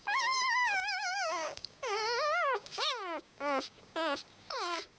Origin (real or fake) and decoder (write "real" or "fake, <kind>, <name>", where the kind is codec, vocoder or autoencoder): fake, codec, DAC